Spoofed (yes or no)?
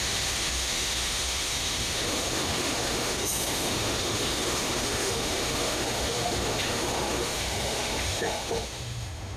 yes